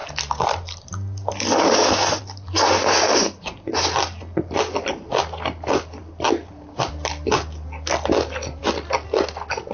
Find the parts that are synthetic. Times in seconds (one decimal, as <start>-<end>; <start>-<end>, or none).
6.0-7.3